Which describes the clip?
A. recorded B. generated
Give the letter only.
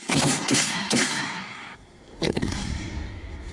B